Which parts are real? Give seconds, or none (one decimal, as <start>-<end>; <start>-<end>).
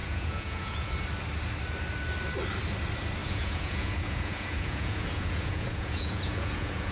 0.9-3.2